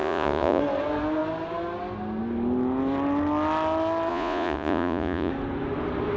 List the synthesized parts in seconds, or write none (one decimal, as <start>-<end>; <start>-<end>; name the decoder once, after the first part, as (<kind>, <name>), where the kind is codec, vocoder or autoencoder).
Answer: 0.0-0.6 (vocoder, Vocos); 4.1-5.3